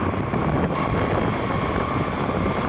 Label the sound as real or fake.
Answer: real